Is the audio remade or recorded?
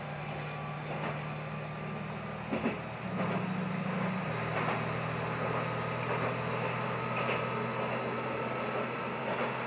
recorded